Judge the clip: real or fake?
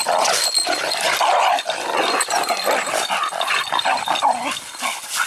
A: real